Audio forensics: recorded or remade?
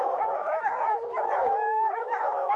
remade